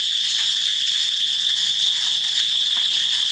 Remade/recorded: recorded